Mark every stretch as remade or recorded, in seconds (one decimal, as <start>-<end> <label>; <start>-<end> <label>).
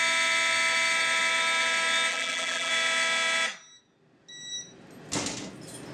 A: 0.0-2.1 recorded; 2.1-2.7 remade; 2.7-5.9 recorded